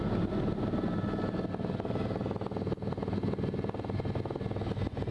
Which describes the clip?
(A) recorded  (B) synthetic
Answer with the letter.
A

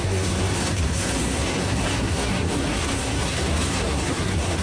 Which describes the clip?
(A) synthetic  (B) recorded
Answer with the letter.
A